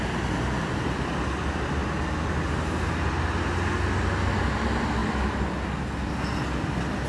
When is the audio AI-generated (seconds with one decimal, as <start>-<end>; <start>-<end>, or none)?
none